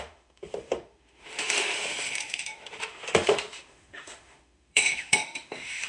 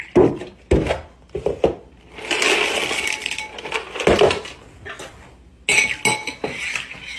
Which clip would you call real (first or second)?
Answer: second